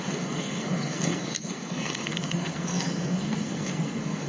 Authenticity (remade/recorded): remade